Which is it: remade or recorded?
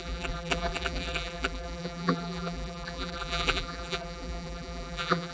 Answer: remade